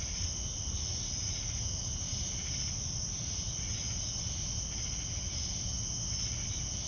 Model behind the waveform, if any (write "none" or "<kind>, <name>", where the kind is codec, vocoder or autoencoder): none